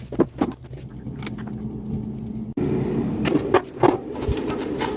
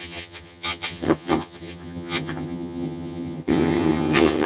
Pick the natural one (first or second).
first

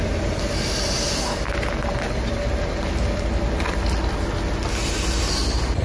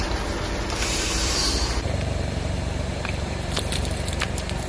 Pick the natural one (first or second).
first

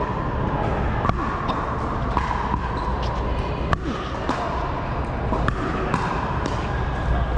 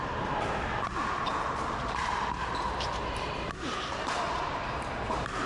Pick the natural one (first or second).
first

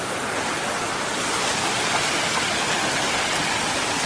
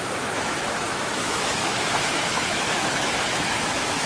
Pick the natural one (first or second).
first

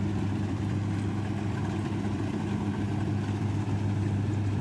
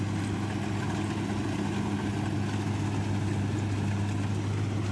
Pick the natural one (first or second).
second